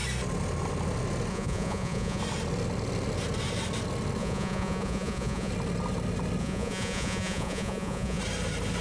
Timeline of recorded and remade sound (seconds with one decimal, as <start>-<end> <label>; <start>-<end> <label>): 0.0-1.3 recorded; 1.3-2.2 remade; 2.2-4.2 recorded; 4.2-5.5 remade; 5.5-6.4 recorded; 6.4-8.2 remade; 8.2-8.8 recorded